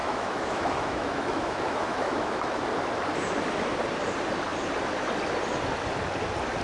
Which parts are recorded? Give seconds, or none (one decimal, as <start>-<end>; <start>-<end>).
2.6-6.6